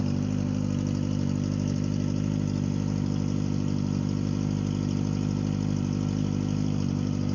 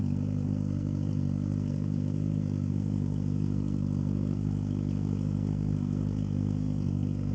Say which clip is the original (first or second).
first